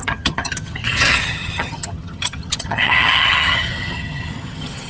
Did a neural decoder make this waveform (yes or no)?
yes